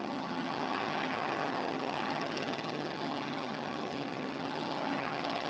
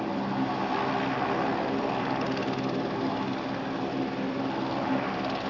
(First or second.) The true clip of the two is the second